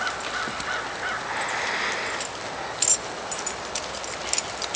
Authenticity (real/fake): real